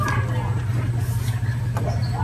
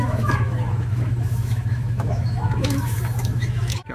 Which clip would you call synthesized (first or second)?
second